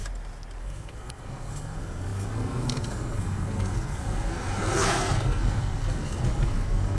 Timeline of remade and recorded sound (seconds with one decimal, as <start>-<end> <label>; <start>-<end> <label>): 0.0-0.6 recorded; 0.6-7.0 remade